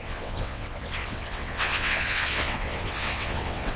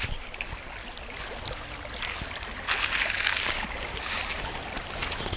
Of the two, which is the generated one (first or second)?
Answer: first